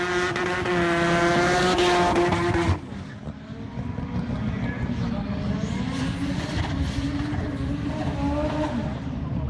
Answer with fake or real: real